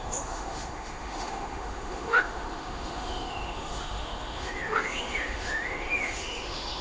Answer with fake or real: fake